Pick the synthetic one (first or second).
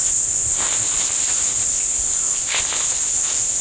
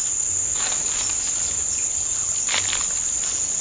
first